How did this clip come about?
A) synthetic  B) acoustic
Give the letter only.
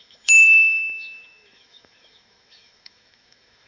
A